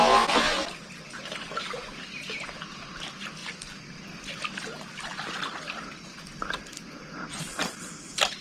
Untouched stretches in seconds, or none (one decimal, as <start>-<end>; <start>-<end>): 0.0-7.6